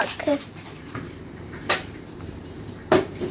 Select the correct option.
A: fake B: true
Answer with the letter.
A